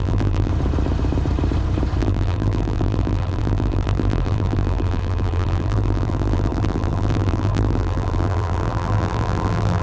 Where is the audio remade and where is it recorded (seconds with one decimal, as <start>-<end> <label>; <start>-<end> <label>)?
0.0-0.5 remade; 0.5-2.0 recorded; 2.0-9.8 remade